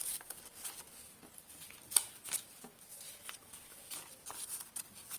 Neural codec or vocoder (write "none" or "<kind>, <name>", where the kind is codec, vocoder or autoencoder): none